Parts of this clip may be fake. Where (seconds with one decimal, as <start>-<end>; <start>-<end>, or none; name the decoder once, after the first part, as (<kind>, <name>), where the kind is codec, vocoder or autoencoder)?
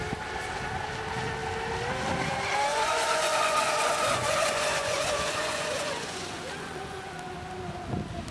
2.7-7.1 (vocoder, Vocos)